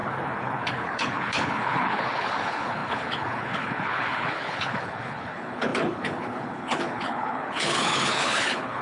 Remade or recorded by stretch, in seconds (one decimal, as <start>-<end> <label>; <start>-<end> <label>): 0.0-8.8 remade